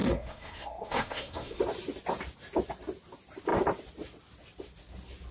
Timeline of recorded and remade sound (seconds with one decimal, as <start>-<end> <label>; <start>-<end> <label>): 0.0-1.6 remade; 1.6-5.3 recorded